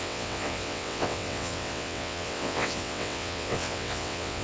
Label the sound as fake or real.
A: fake